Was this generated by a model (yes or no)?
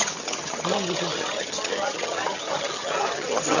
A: yes